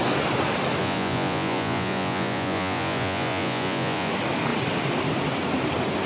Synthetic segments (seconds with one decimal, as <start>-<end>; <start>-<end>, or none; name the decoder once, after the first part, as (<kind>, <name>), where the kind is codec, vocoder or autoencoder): 0.8-4.1 (vocoder, Vocos)

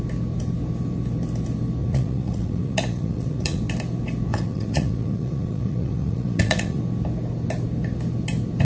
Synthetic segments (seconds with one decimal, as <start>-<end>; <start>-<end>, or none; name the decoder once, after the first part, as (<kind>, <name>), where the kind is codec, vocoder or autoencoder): 1.8-3.6 (vocoder, Vocos); 4.3-6.8